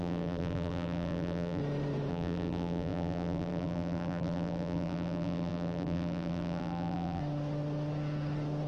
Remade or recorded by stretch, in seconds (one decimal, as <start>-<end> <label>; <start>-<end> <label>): 0.0-1.6 remade; 1.6-2.1 recorded; 2.1-7.2 remade; 7.2-8.7 recorded